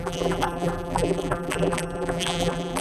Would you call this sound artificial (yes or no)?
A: yes